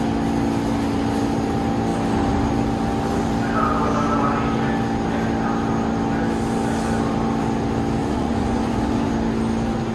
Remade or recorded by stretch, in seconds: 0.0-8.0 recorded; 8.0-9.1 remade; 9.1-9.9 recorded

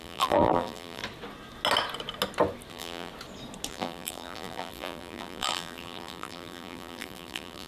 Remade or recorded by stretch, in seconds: 0.0-1.0 remade; 1.0-2.7 recorded; 2.7-3.1 remade; 3.1-3.7 recorded; 3.7-7.7 remade

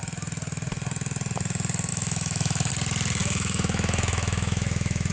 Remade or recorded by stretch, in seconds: 0.0-1.9 recorded; 1.9-2.7 remade; 2.7-3.2 recorded; 3.2-5.1 remade

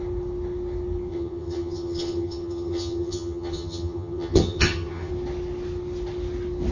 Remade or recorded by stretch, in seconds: 0.0-1.1 recorded; 1.1-5.1 remade; 5.1-6.7 recorded

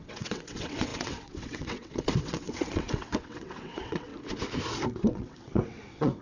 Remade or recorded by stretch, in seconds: 0.0-4.1 remade; 4.1-5.0 recorded; 5.0-6.2 remade

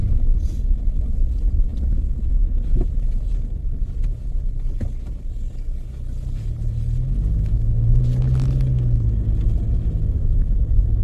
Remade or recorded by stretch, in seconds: 0.0-7.3 recorded; 7.3-8.0 remade; 8.0-11.0 recorded